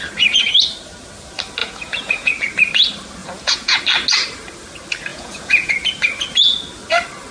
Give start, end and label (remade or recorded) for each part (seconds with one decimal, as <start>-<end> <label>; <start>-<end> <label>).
0.0-1.6 recorded; 1.6-2.3 remade; 2.3-3.2 recorded; 3.2-3.8 remade; 3.8-5.1 recorded; 5.1-5.7 remade; 5.7-7.3 recorded